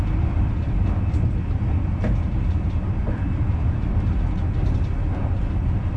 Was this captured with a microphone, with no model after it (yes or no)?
yes